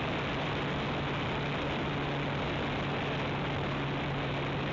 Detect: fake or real real